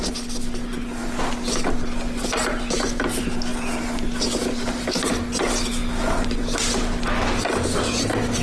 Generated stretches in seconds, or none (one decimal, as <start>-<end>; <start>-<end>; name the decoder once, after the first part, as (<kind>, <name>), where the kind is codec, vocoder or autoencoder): none